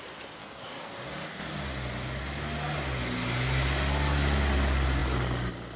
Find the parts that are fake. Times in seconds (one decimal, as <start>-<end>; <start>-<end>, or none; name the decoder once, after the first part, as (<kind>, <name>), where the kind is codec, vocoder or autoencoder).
0.4-0.9 (codec, SNAC)